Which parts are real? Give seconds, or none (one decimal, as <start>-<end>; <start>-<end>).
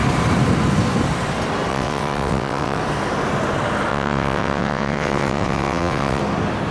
0.0-1.7; 2.8-3.9; 6.2-6.7